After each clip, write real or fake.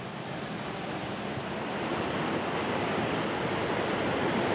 real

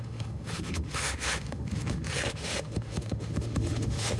fake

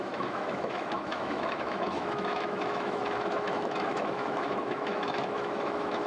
fake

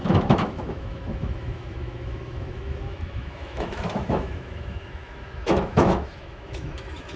fake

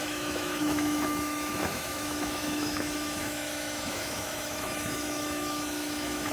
fake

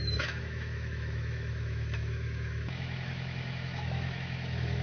fake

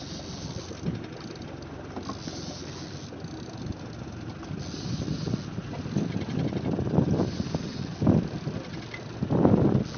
real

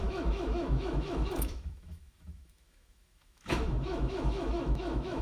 fake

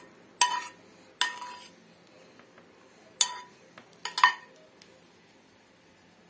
real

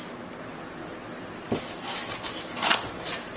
real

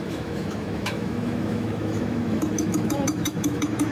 fake